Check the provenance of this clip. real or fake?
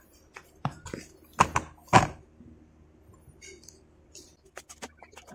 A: fake